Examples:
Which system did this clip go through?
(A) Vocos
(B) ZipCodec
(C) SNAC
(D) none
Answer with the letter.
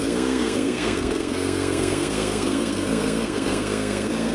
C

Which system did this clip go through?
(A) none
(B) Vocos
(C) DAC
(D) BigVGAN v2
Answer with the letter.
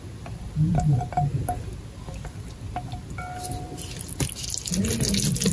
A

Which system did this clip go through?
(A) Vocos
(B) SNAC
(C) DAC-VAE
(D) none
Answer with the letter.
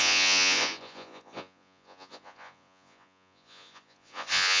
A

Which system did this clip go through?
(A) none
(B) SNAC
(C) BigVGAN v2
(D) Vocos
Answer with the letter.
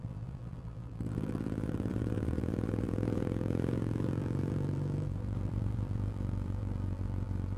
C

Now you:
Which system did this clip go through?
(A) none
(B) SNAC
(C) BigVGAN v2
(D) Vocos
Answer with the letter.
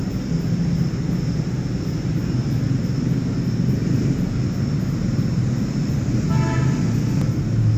A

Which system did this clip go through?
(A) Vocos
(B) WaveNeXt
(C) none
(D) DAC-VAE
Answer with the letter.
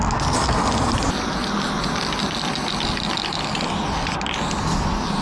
C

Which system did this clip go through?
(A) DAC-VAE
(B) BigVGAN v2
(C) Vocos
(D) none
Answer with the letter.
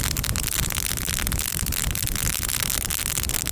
D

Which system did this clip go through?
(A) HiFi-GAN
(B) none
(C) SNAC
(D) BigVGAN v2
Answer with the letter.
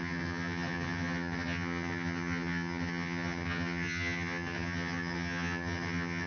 A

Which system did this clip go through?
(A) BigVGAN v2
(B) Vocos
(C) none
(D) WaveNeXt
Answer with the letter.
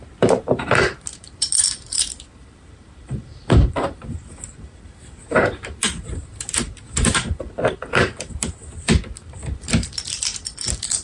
A